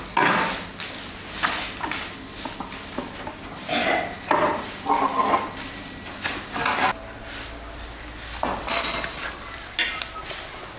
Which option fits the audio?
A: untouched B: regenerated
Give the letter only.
A